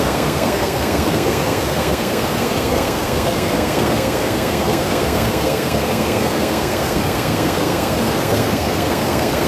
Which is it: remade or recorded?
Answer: remade